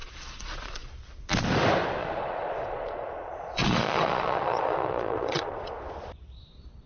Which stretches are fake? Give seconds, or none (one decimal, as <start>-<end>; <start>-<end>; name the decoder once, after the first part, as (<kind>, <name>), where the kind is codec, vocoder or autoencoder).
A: 0.0-0.9 (vocoder, Vocos); 2.0-5.8